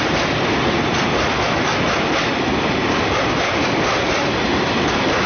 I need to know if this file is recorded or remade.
recorded